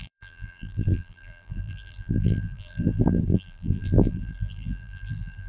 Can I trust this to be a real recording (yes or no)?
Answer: no